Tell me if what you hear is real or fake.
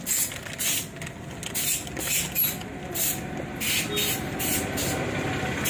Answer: real